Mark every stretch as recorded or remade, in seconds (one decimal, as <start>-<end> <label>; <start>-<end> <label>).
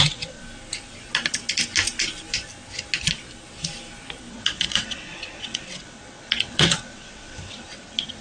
0.0-0.4 remade; 0.4-4.3 recorded; 4.3-8.2 remade